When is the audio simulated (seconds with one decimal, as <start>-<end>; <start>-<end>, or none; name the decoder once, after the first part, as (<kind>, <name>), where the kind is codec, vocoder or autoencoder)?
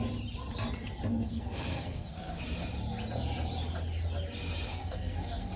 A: 1.1-2.4 (codec, SNAC); 4.7-5.6